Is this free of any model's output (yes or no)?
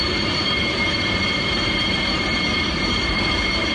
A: no